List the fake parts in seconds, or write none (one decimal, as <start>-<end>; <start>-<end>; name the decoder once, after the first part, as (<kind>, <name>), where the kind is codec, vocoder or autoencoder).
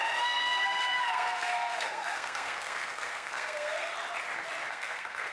0.0-3.9 (codec, SNAC); 4.7-5.3